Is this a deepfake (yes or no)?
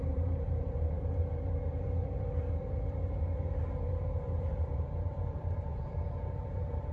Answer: yes